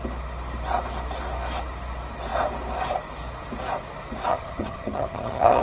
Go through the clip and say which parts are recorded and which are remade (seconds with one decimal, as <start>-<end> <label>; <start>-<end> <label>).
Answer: 0.0-4.3 recorded; 4.3-5.6 remade